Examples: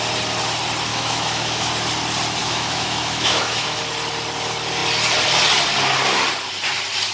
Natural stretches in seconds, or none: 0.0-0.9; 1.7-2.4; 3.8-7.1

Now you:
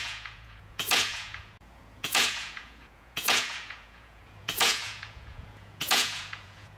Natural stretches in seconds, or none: none

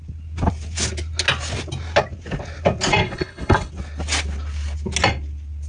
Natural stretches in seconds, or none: 0.0-3.0; 3.7-5.7

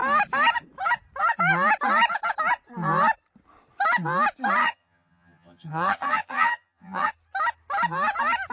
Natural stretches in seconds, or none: 0.0-4.6; 7.1-8.5

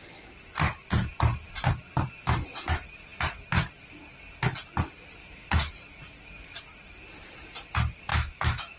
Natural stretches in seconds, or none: 0.0-5.2; 5.7-8.1